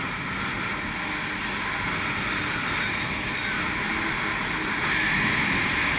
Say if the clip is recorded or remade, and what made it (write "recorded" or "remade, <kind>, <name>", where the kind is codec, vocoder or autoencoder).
recorded